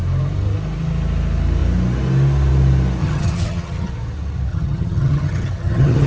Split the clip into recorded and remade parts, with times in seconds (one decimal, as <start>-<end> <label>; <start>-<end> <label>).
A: 0.0-3.0 recorded; 3.0-3.9 remade; 3.9-4.5 recorded; 4.5-6.1 remade